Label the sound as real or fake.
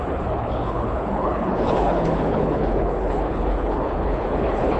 fake